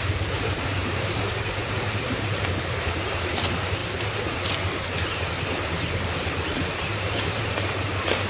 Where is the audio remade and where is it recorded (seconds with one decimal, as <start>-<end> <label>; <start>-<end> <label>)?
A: 0.0-3.8 remade; 3.8-4.8 recorded; 4.8-8.3 remade